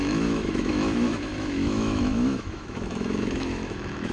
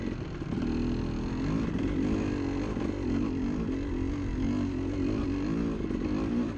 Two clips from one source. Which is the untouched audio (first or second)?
second